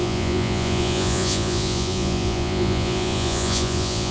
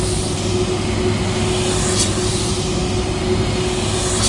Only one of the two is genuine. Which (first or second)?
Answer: second